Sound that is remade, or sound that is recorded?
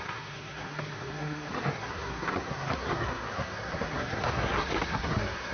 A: remade